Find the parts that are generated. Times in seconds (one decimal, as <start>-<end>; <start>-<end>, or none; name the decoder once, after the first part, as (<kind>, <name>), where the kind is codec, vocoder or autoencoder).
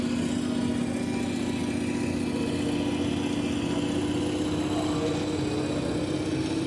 none